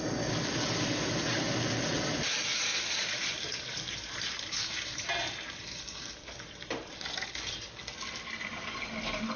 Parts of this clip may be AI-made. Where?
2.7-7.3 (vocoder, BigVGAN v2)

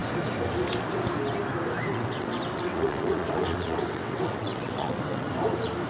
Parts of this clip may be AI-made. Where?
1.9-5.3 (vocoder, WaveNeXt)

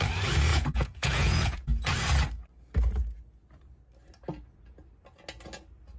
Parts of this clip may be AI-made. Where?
0.5-1.9 (vocoder, Vocos)

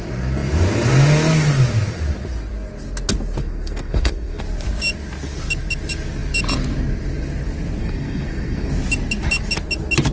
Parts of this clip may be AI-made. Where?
3.4-4.4 (codec, SNAC); 7.8-8.7

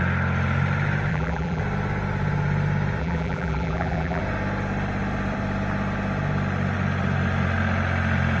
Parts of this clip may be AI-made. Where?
1.1-1.6 (vocoder, BigVGAN v2); 3.0-4.2

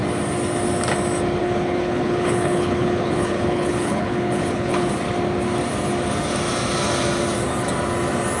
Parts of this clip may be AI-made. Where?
1.4-4.9 (codec, HILCodec)

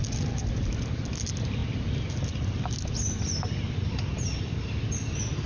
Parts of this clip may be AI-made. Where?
none

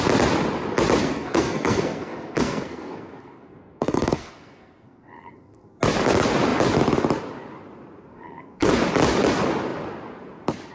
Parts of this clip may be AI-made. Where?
1.0-5.8 (codec, SNAC); 8.1-8.7